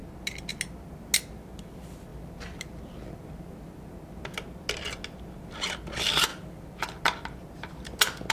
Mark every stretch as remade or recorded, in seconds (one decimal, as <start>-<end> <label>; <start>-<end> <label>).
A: 0.0-8.3 recorded